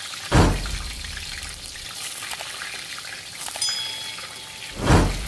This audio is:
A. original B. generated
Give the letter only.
A